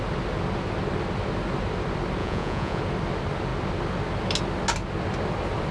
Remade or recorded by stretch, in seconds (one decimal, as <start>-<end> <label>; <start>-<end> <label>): 0.0-2.2 recorded; 2.2-2.8 remade; 2.8-5.7 recorded

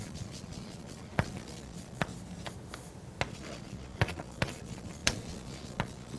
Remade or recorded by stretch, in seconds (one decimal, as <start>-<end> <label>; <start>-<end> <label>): 0.0-2.1 remade; 2.1-3.3 recorded; 3.3-6.2 remade